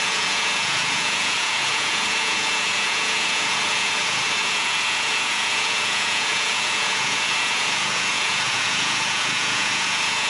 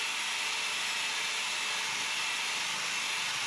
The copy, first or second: first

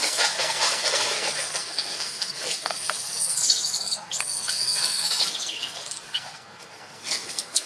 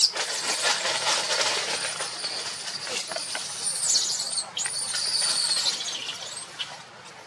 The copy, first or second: first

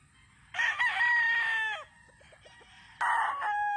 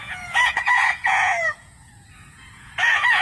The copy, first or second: second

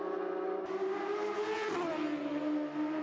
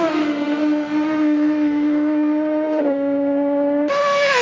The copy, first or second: second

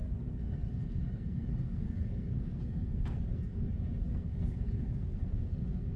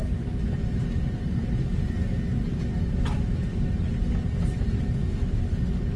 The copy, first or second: first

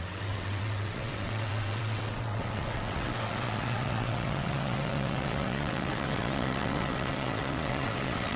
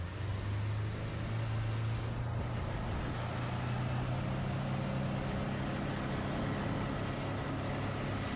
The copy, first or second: first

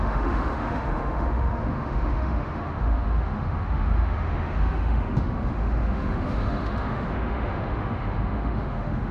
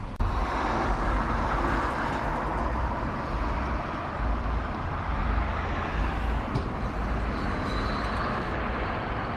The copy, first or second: first